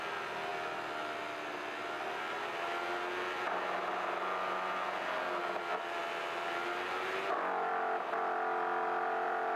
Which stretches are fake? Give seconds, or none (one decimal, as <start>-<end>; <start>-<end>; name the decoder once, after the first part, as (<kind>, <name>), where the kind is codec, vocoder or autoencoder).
0.0-9.6 (vocoder, BigVGAN v2)